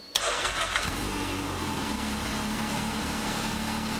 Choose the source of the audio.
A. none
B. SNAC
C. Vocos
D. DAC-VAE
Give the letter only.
B